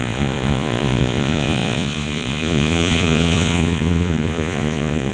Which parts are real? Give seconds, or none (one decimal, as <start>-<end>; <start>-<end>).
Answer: none